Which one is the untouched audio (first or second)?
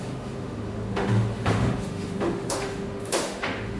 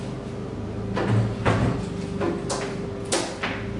second